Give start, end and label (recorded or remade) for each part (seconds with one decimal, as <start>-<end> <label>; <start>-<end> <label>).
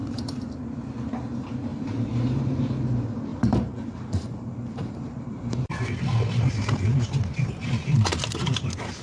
0.0-0.5 remade; 0.5-1.7 recorded; 1.7-2.4 remade; 2.4-3.3 recorded; 3.3-5.6 remade; 5.6-9.0 recorded